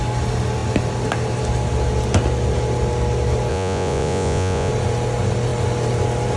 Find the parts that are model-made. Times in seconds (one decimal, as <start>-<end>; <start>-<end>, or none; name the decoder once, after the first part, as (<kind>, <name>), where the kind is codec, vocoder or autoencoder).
3.5-4.7 (vocoder, Vocos)